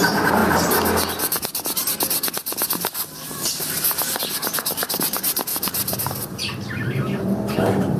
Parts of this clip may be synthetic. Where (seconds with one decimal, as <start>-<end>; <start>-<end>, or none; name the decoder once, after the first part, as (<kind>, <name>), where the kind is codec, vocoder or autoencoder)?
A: 0.0-0.4 (vocoder, BigVGAN v2); 4.2-8.0